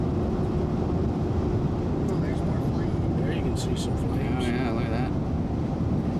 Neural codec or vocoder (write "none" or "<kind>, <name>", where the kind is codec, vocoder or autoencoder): none